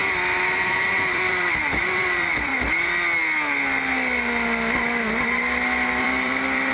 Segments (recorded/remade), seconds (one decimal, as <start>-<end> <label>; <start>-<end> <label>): 0.0-2.5 remade; 2.5-6.0 recorded; 6.0-6.7 remade